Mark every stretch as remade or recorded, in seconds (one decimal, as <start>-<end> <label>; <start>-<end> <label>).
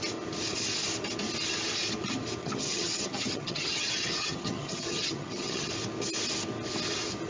0.0-2.4 recorded; 2.4-5.7 remade; 5.7-7.3 recorded